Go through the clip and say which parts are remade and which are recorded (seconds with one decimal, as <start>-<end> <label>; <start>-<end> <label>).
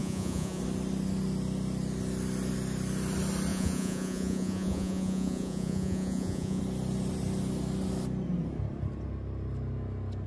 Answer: 0.0-0.6 remade; 0.6-3.5 recorded; 3.5-6.6 remade; 6.6-10.3 recorded